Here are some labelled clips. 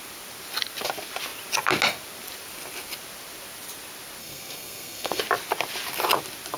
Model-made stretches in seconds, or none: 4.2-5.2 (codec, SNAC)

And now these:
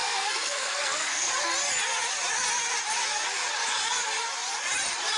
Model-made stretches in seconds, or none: 0.0-1.3 (codec, SNAC)

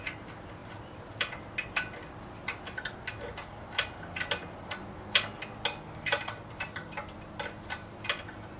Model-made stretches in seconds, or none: none

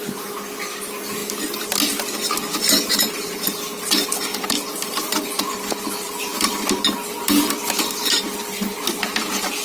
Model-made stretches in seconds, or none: none

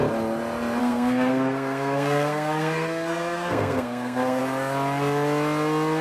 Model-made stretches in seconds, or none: 0.8-4.4 (codec, SNAC)